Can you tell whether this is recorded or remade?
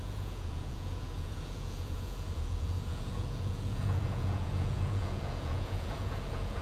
remade